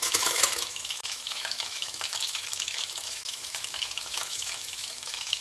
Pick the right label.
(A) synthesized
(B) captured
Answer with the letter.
A